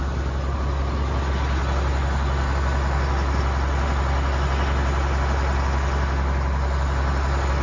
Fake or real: real